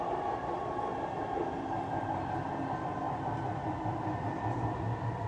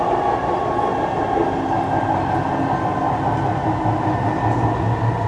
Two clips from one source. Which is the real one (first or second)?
second